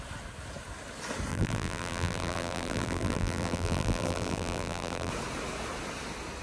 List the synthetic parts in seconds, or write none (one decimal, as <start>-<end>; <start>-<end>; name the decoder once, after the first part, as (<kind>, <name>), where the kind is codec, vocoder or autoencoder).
1.3-5.1 (vocoder, BigVGAN v2)